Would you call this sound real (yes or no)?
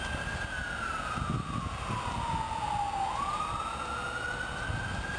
yes